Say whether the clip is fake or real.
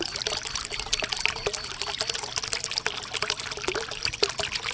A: real